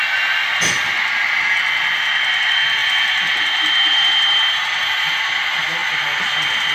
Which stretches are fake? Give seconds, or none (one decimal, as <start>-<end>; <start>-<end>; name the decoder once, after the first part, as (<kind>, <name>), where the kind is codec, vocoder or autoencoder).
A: 2.8-4.1 (vocoder, BigVGAN v2)